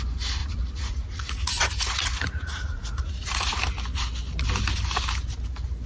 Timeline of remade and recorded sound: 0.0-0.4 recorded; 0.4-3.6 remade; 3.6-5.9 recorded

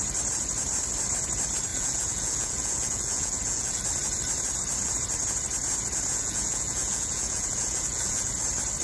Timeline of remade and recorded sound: 0.0-1.7 recorded; 1.7-3.8 remade; 3.8-6.1 recorded; 6.1-8.3 remade; 8.3-8.8 recorded

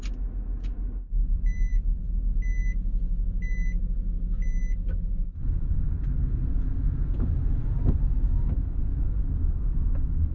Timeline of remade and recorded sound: 0.0-1.2 recorded; 1.2-2.0 remade; 2.0-10.3 recorded

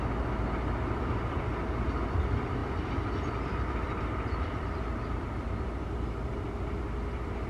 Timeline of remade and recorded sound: 0.0-2.6 recorded; 2.6-6.8 remade; 6.8-7.5 recorded